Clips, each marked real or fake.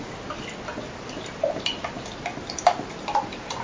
real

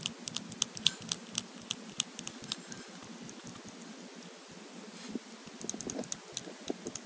real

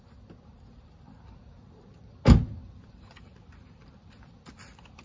real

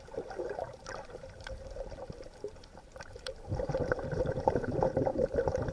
fake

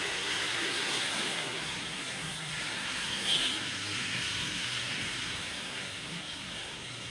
fake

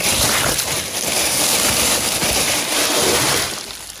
fake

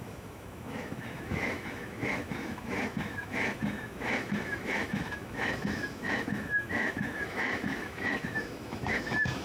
fake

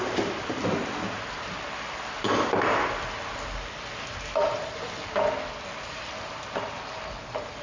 real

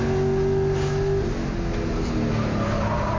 real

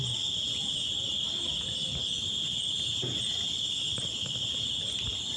real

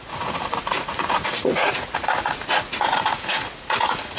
fake